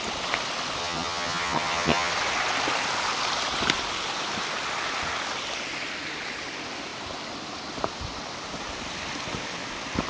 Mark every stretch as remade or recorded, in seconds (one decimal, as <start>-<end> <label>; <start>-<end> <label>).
0.0-0.8 recorded; 0.8-2.1 remade; 2.1-10.1 recorded